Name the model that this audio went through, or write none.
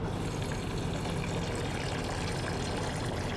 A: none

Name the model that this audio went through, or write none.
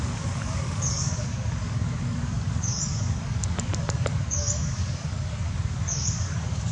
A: codec, DAC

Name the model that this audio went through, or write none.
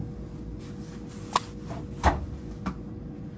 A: none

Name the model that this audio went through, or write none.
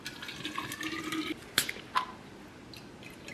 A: none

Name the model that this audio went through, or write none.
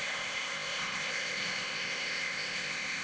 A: codec, ZipCodec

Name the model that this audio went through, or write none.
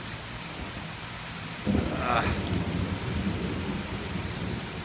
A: none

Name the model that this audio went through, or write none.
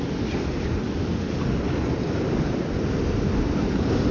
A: none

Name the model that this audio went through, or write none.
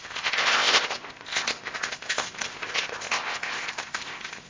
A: codec, ZipCodec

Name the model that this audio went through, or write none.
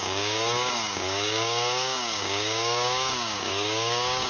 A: codec, DAC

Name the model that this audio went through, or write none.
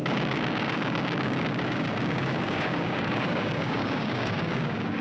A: codec, DAC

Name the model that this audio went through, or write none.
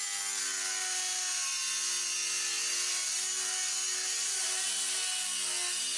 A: none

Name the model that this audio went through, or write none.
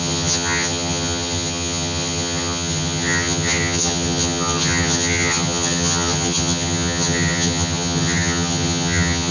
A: vocoder, HiFi-GAN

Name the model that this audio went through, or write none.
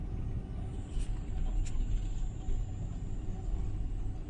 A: none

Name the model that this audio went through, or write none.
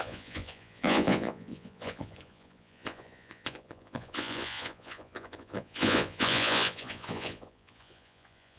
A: vocoder, Vocos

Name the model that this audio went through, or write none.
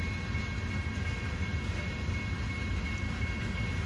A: none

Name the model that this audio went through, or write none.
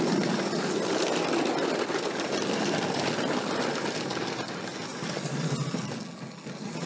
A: none